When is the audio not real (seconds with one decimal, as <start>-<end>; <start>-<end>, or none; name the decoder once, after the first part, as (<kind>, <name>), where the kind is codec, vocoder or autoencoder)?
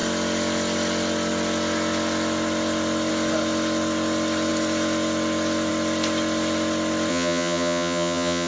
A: 7.1-8.5 (vocoder, HiFi-GAN)